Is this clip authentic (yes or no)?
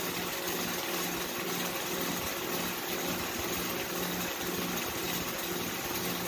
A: yes